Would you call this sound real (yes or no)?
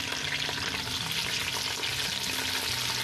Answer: yes